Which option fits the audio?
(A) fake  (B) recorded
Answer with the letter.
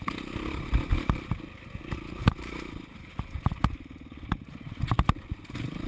B